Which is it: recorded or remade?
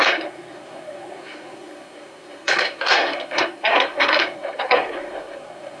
remade